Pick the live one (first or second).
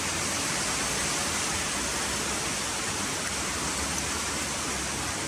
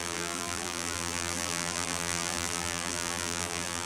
first